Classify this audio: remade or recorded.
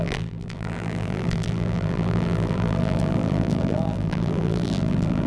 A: remade